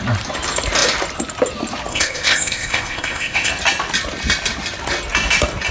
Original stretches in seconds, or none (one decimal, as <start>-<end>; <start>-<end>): 0.0-1.9; 3.5-5.7